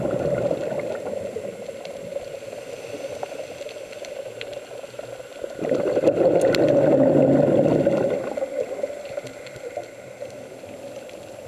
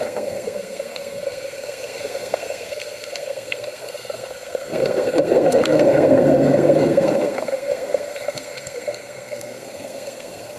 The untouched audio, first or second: first